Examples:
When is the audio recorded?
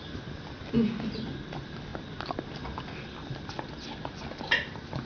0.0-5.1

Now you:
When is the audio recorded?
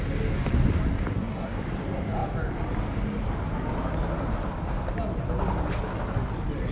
0.0-1.1; 1.6-6.7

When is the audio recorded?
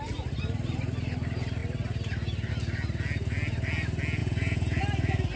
0.0-4.2; 4.8-5.4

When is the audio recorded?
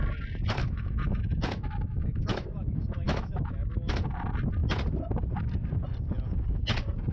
0.0-0.6; 3.9-7.1